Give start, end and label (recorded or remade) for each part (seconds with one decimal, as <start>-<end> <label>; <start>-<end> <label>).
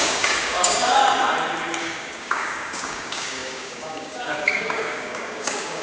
0.0-1.0 remade; 1.0-1.8 recorded; 1.8-5.8 remade